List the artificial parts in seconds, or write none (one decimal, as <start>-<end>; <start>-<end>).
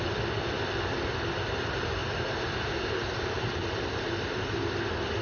2.0-4.1